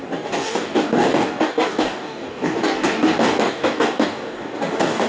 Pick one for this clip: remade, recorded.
remade